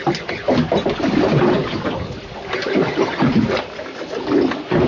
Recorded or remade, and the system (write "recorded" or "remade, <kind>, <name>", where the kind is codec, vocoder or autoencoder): recorded